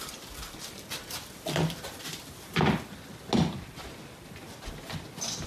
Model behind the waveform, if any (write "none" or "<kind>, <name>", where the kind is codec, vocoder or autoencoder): none